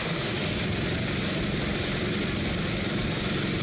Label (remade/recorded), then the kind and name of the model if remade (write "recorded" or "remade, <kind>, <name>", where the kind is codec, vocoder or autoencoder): recorded